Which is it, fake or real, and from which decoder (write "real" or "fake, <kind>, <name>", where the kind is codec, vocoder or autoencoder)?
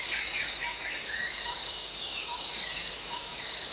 fake, codec, DAC